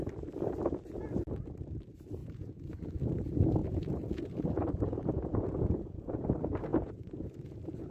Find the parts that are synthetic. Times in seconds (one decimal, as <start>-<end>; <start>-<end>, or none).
2.2-2.9; 3.6-6.2; 6.7-7.9